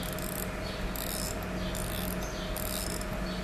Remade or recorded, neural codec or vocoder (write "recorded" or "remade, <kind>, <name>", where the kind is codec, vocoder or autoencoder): recorded